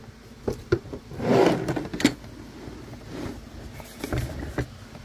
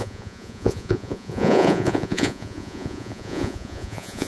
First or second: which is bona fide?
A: first